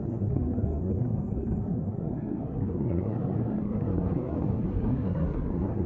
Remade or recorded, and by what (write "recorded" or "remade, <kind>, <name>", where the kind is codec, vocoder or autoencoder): remade, codec, SNAC